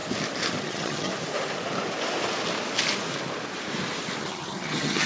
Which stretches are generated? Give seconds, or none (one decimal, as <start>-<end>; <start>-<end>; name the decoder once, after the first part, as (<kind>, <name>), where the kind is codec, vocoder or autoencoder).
0.6-1.1 (vocoder, HiFi-GAN); 4.2-5.1